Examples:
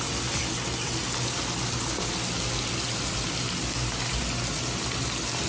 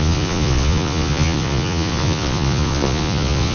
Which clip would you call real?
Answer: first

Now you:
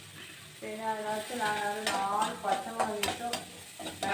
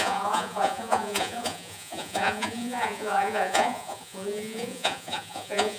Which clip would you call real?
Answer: first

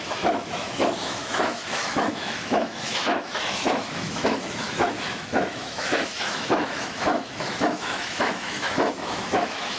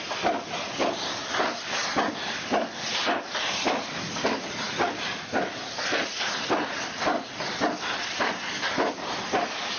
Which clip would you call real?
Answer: second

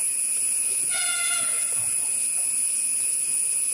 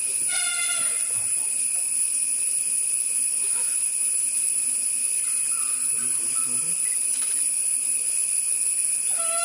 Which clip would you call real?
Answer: second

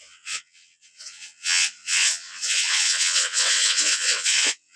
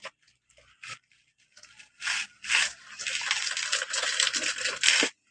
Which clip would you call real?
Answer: second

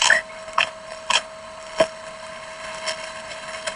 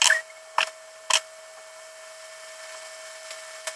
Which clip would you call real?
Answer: second